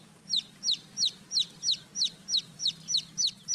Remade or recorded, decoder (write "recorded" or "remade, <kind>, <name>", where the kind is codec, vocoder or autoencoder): recorded